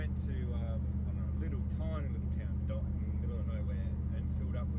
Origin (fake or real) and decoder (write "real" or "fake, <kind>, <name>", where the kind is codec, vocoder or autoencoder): real